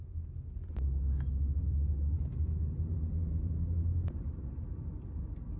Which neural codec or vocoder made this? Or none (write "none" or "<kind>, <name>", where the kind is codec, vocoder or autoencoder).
none